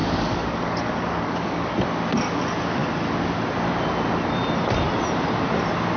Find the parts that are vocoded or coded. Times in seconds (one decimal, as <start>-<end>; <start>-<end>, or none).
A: 0.0-1.7